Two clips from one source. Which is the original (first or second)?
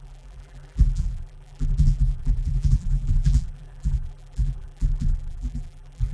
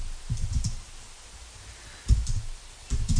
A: second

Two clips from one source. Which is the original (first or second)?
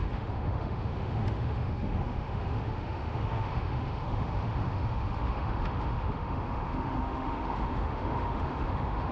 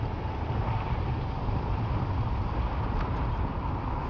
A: second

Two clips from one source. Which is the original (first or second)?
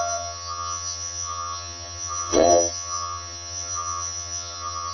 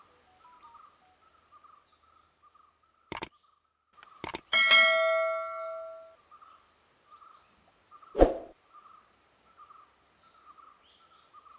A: second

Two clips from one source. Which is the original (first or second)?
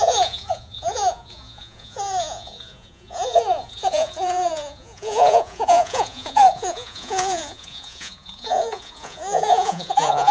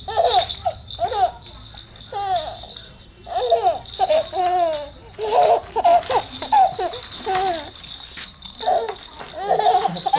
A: second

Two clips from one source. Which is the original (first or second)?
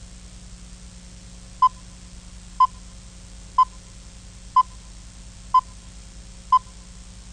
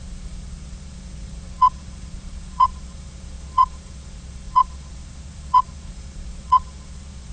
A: first